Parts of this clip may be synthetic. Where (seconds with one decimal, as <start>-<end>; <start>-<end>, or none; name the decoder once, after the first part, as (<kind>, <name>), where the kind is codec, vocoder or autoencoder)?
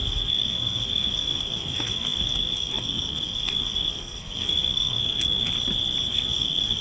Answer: 0.0-5.5 (codec, SNAC); 6.1-6.8